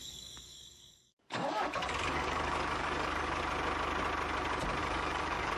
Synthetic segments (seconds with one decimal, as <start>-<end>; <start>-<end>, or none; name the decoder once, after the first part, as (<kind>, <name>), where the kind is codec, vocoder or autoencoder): 0.0-3.4 (codec, DAC); 4.8-5.6